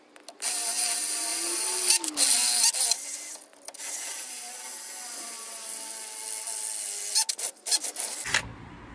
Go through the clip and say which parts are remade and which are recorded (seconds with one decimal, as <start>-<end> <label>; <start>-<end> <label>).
0.0-8.9 recorded